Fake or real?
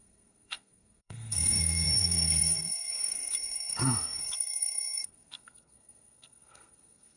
fake